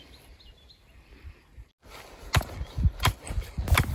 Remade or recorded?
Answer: recorded